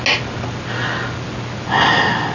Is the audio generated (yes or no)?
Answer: no